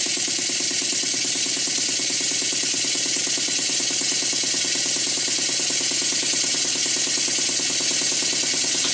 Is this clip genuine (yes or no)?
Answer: yes